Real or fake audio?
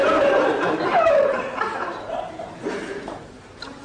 fake